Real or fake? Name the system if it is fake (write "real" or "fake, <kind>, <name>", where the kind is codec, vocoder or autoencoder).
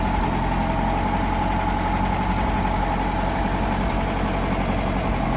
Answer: real